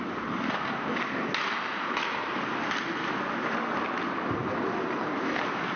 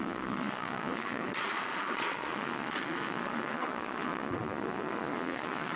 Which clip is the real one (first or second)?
first